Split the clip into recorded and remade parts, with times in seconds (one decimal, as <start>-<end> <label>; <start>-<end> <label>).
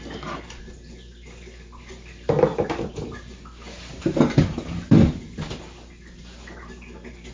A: 0.0-7.3 recorded